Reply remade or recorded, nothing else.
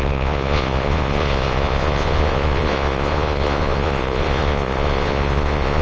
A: remade